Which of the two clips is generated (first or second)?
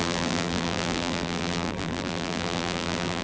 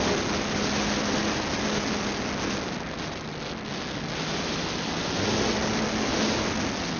first